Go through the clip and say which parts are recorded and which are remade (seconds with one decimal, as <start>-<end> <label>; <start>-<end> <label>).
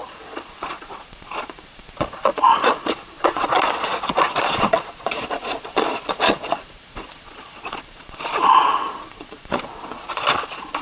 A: 0.0-10.8 remade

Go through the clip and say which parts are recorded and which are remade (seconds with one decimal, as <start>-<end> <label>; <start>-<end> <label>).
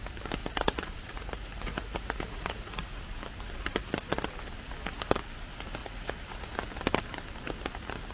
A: 0.0-0.4 recorded; 0.4-3.0 remade; 3.0-5.8 recorded; 5.8-6.7 remade; 6.7-8.1 recorded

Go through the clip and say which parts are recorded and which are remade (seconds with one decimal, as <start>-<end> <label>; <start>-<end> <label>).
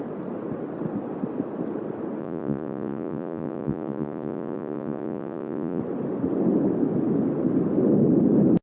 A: 0.0-2.2 recorded; 2.2-5.8 remade; 5.8-8.6 recorded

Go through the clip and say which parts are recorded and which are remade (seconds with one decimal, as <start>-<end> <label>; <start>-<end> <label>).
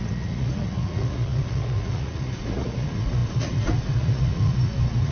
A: 0.0-5.1 remade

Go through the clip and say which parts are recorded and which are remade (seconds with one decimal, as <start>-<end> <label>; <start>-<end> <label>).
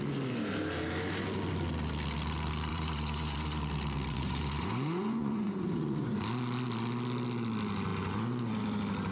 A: 0.0-2.7 recorded; 2.7-3.6 remade; 3.6-4.1 recorded; 4.1-6.1 remade; 6.1-9.1 recorded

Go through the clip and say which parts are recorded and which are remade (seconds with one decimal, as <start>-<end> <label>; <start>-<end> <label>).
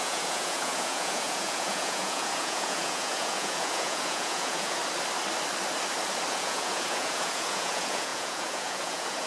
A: 0.0-4.8 remade; 4.8-6.3 recorded; 6.3-9.3 remade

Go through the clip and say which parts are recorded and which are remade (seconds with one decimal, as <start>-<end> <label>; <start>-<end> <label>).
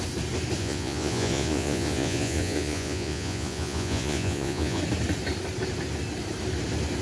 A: 0.0-0.6 recorded; 0.6-4.8 remade; 4.8-7.0 recorded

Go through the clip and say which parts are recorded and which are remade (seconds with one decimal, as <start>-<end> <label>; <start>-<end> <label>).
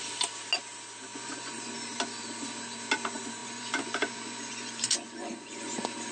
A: 0.0-1.1 recorded; 1.1-1.7 remade; 1.7-3.4 recorded; 3.4-6.1 remade